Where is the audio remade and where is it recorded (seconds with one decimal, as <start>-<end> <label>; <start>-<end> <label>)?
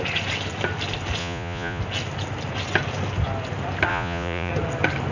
0.0-1.2 recorded; 1.2-1.8 remade; 1.8-3.9 recorded; 3.9-4.5 remade; 4.5-5.1 recorded